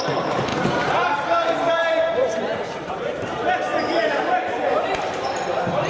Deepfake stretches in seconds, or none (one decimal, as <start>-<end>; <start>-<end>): 0.5-1.7; 2.2-5.4